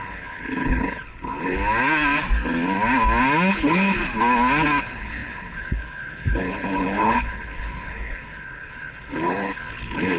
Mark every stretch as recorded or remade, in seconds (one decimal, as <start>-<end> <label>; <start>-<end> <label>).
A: 0.0-1.6 remade; 1.6-3.5 recorded; 3.5-4.0 remade; 4.0-4.8 recorded; 4.8-10.2 remade